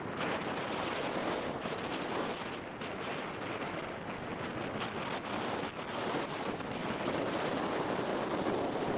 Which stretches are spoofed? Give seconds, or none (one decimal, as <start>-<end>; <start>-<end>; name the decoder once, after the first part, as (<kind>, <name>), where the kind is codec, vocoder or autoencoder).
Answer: 6.8-7.3 (vocoder, BigVGAN v2); 8.1-8.6